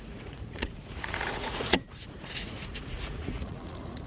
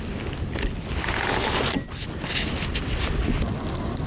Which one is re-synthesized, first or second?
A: first